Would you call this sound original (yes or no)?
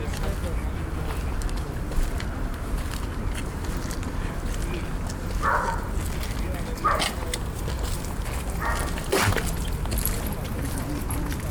yes